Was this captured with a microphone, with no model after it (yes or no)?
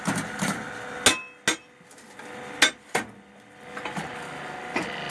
yes